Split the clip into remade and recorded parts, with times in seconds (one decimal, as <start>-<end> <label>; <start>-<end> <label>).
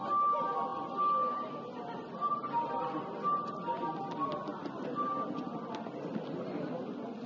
0.0-7.3 recorded